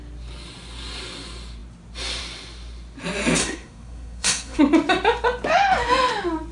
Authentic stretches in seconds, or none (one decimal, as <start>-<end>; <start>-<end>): 0.0-3.4; 4.6-6.5